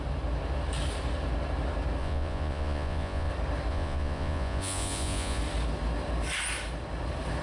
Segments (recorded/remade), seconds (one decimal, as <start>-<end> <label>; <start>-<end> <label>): 0.0-2.0 recorded; 2.0-3.3 remade; 3.3-3.7 recorded; 3.7-5.4 remade; 5.4-7.4 recorded